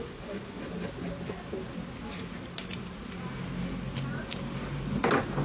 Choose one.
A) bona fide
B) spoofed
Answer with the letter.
A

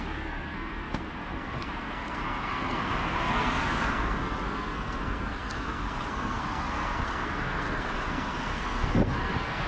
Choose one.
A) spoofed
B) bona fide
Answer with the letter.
A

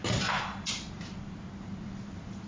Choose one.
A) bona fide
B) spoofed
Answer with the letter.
A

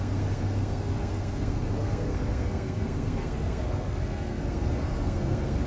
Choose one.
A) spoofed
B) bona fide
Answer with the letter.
A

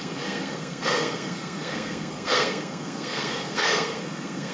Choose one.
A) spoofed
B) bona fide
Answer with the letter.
A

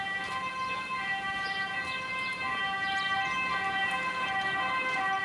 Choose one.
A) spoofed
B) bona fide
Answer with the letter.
B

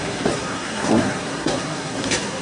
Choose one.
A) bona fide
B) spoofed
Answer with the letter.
B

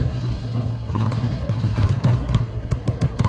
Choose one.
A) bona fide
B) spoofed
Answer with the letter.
B